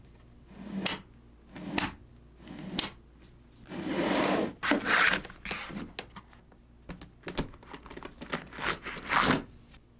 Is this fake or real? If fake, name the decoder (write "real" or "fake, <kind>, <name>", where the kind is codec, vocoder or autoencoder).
real